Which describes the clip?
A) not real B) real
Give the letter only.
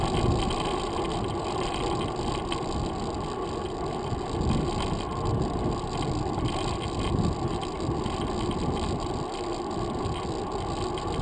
B